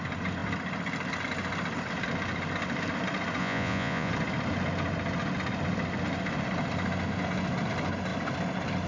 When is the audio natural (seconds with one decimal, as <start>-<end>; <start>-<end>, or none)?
0.0-3.4; 4.1-8.9